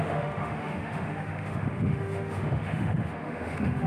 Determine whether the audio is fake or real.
fake